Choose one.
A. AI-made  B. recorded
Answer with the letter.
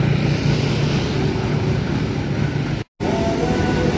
B